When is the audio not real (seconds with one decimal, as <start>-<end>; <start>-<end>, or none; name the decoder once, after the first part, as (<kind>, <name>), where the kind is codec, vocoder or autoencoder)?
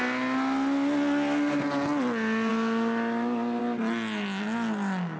none